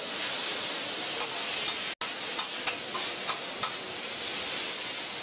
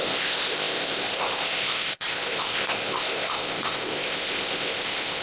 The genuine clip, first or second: first